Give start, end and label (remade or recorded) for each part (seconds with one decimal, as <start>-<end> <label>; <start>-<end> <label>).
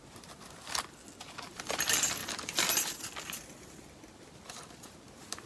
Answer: 0.0-5.5 recorded